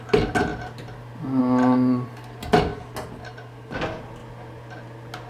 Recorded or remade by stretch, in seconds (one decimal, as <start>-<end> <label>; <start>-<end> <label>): 0.0-5.3 recorded